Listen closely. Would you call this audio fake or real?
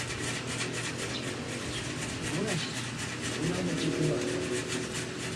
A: real